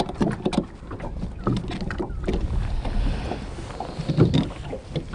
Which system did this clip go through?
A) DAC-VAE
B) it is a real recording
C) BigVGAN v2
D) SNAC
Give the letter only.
B